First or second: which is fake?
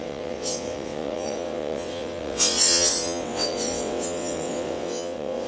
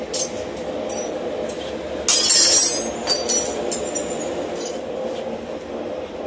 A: first